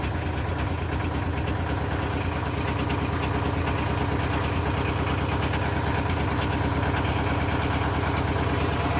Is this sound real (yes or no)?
yes